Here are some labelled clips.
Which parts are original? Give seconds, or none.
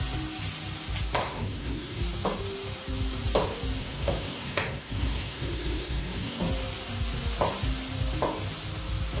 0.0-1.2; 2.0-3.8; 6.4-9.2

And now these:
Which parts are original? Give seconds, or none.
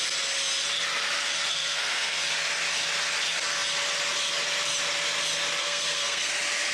0.0-1.5; 2.2-5.6; 6.3-6.7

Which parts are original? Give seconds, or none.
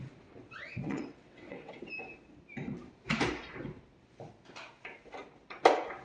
0.0-0.4; 1.9-6.0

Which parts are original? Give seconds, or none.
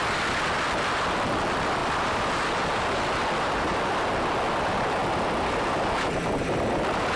0.0-7.2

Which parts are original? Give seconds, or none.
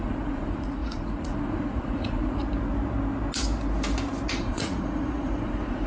2.4-4.4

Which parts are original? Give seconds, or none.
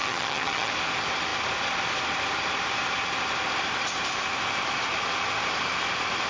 0.7-6.3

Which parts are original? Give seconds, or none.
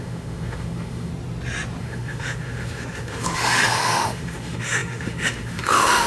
1.1-1.8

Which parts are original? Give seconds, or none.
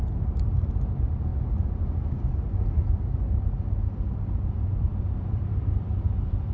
1.3-4.8